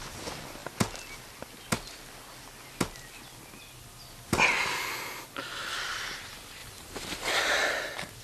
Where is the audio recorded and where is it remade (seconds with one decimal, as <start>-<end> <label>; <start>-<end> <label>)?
0.0-6.6 recorded; 6.6-7.3 remade; 7.3-8.2 recorded